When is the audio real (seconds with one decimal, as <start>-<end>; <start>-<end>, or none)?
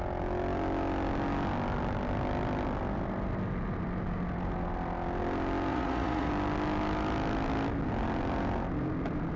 0.0-5.7; 6.3-9.4